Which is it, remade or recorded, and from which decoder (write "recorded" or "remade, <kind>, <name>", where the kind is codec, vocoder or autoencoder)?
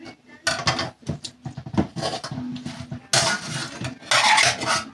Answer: recorded